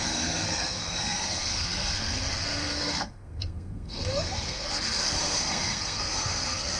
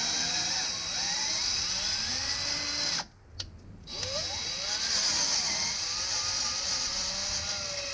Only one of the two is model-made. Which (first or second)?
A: first